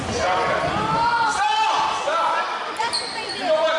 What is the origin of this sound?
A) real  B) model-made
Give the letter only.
A